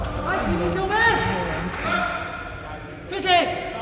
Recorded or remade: recorded